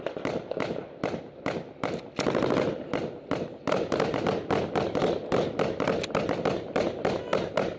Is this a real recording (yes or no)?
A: yes